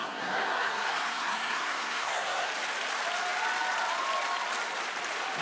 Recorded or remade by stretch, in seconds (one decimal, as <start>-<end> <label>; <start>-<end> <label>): 0.0-2.5 remade; 2.5-5.4 recorded